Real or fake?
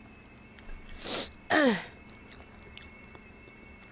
real